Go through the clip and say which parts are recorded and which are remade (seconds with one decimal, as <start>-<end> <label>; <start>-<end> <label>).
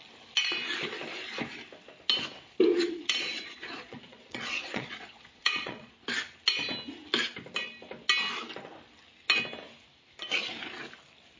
0.0-2.7 recorded; 2.7-5.9 remade; 5.9-11.4 recorded